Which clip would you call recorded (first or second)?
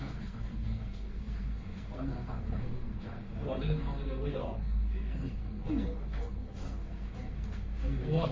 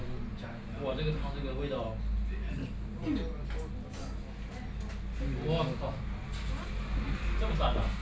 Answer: second